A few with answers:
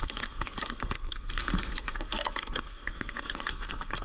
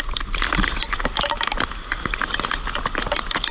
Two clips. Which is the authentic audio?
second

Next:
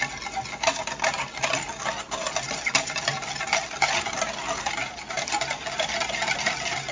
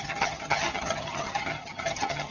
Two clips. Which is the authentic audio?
first